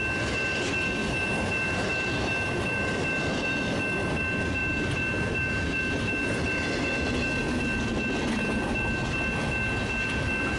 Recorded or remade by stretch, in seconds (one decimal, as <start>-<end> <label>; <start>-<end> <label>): 0.0-1.0 recorded; 1.0-3.8 remade; 3.8-4.6 recorded; 4.6-5.8 remade; 5.8-10.6 recorded